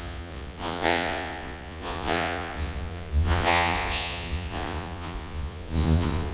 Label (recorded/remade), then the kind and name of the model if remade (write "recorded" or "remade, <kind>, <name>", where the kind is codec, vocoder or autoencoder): remade, vocoder, Vocos